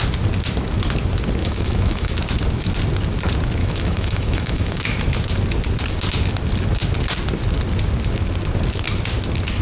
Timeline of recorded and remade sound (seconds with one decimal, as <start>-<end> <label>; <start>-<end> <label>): 0.0-1.4 recorded; 1.4-2.1 remade; 2.1-3.6 recorded; 3.6-4.8 remade; 4.8-9.6 recorded